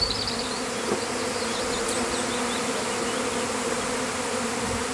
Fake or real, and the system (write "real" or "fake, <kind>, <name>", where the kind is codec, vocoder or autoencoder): real